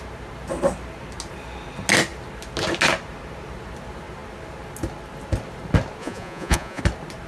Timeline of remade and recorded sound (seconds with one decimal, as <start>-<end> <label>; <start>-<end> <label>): 0.0-6.0 recorded; 6.0-6.8 remade; 6.8-7.3 recorded